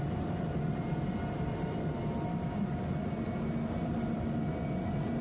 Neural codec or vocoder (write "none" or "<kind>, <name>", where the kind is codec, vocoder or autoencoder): none